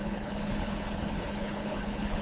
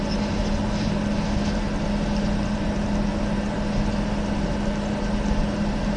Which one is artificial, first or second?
first